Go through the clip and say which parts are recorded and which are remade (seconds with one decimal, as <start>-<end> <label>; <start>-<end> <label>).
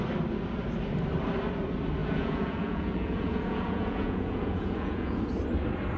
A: 0.0-2.0 recorded; 2.0-5.2 remade; 5.2-6.0 recorded